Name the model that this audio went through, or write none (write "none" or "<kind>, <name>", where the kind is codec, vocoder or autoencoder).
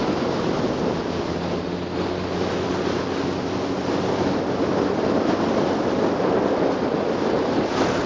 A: none